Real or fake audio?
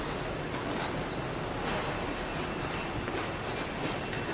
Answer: real